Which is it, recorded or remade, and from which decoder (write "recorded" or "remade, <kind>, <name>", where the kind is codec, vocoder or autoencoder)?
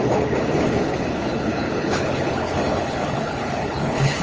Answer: remade, codec, HILCodec